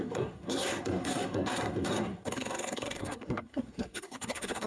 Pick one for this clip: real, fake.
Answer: fake